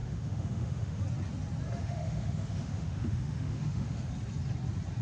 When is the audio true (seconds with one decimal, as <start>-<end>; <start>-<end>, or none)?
1.0-1.8; 4.1-5.0

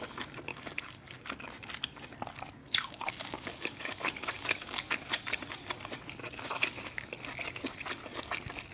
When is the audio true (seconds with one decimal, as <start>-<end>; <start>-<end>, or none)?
0.0-0.5; 1.2-2.6; 5.1-6.2; 7.1-8.7